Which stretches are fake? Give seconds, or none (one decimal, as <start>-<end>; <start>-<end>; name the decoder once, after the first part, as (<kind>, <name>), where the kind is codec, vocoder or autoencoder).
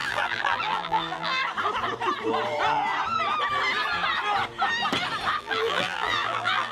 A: 0.0-1.4 (vocoder, BigVGAN v2); 5.4-6.7